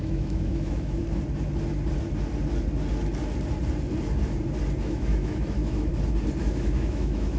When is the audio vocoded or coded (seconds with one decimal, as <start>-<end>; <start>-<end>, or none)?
0.0-1.0; 4.8-5.9; 6.4-7.4